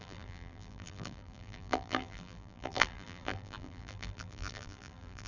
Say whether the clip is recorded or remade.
remade